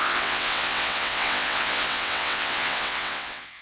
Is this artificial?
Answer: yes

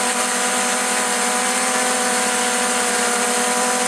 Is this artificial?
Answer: no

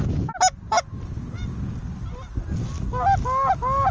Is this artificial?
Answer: no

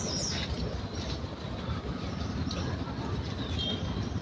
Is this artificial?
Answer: no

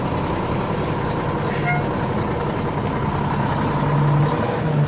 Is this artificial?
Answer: no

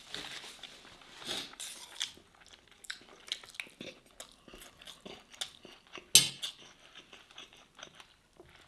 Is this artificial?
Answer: no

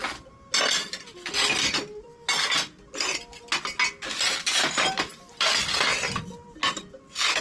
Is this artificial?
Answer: no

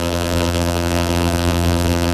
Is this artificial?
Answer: yes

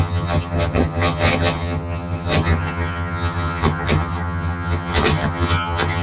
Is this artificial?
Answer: yes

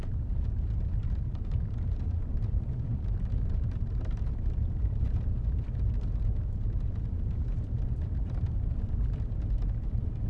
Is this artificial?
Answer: yes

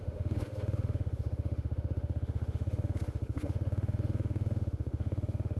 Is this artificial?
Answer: yes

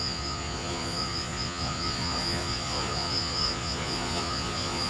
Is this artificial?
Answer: yes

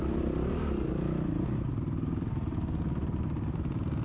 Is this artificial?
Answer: no